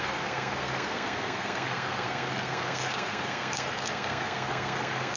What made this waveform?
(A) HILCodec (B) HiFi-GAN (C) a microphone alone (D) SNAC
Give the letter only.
D